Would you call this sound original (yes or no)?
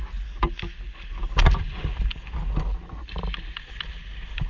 yes